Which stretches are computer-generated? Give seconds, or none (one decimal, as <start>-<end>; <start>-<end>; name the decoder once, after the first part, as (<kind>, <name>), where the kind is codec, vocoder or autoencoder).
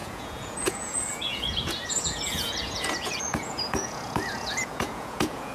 0.0-5.5 (vocoder, Vocos)